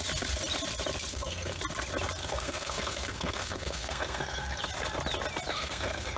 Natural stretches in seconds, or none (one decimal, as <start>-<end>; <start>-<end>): 0.0-1.1; 1.6-2.2; 4.6-5.5